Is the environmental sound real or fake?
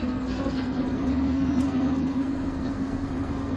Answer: fake